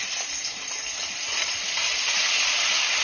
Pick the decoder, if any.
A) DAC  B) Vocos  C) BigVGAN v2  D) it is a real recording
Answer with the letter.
D